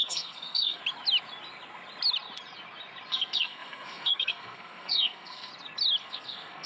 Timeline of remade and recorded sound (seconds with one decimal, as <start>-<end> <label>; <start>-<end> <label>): 0.0-0.8 remade; 0.8-3.1 recorded; 3.1-5.5 remade; 5.5-6.0 recorded; 6.0-6.7 remade